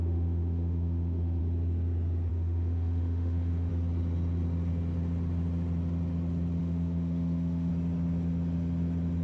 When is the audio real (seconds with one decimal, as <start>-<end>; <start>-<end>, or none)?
1.4-2.3; 3.7-6.6; 7.7-9.2